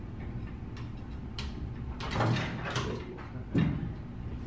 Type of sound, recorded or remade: recorded